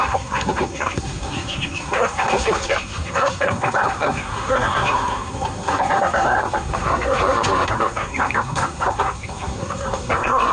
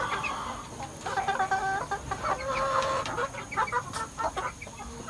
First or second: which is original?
second